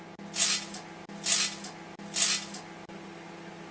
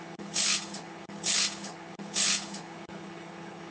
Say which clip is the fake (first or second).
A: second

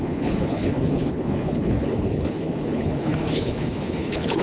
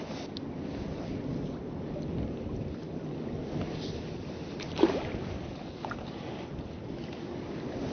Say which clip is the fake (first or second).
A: first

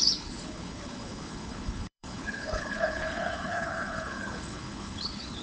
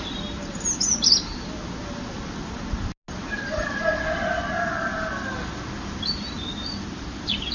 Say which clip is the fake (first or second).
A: first